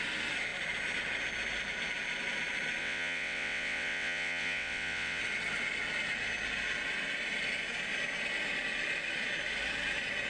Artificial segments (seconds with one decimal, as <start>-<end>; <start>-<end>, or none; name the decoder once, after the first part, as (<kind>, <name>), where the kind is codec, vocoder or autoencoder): 2.8-5.2 (vocoder, WaveNeXt)